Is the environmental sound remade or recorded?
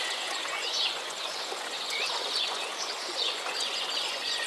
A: remade